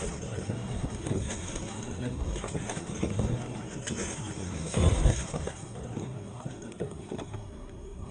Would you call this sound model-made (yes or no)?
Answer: yes